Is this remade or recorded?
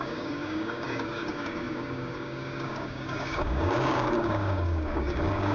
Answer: remade